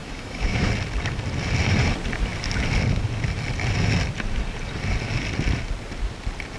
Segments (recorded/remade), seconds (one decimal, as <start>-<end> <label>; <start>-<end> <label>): 0.0-0.7 remade; 0.7-6.6 recorded